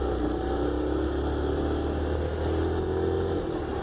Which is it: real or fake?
real